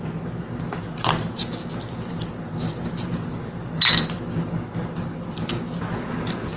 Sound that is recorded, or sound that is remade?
recorded